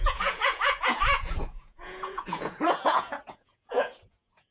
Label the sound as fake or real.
fake